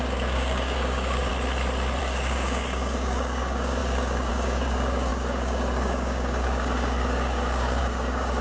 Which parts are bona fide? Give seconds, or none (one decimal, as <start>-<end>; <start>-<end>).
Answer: 1.3-2.0